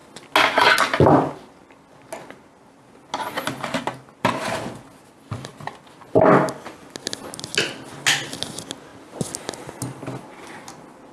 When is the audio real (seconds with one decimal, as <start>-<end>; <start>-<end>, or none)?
0.0-11.1